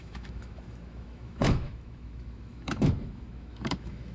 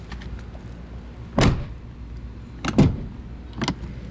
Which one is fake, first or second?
first